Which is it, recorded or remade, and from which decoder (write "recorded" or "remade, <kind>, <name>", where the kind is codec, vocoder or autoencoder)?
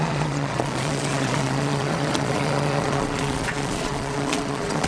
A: remade, vocoder, Vocos